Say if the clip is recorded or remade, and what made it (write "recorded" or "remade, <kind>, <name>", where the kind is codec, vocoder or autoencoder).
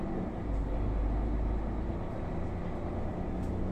recorded